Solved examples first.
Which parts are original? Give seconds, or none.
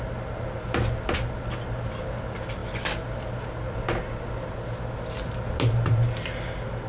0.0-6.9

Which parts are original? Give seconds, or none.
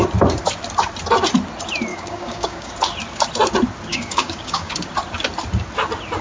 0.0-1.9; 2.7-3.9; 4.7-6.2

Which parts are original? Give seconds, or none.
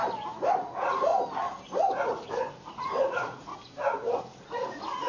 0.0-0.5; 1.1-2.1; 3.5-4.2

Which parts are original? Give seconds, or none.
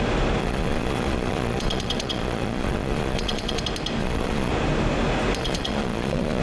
0.0-0.4; 3.6-4.0; 4.5-5.4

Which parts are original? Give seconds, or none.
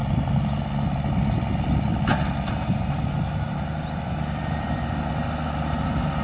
0.0-6.2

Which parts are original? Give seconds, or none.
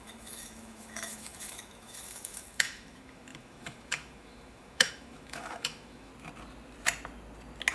6.1-7.7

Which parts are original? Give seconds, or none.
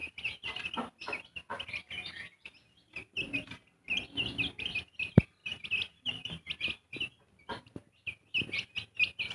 0.0-9.3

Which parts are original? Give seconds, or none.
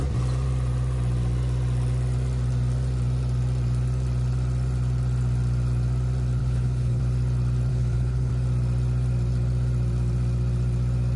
0.0-6.4; 7.0-7.7; 8.3-11.2